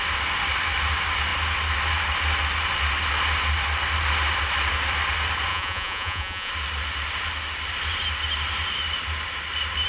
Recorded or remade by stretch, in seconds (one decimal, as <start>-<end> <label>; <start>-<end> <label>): 0.0-5.5 recorded; 5.5-6.5 remade; 6.5-9.9 recorded